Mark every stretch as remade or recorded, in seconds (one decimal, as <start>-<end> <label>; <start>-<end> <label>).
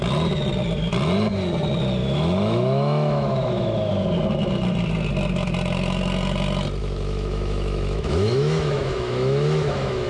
0.0-2.0 recorded; 2.0-3.9 remade; 3.9-6.8 recorded; 6.8-10.1 remade